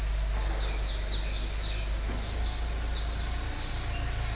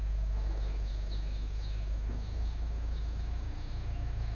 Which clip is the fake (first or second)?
second